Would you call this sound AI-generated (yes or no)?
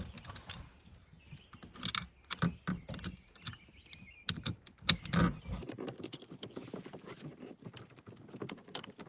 no